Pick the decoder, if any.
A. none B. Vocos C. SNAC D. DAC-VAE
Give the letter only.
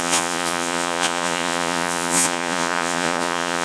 B